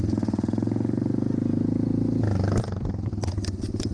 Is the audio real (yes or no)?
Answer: yes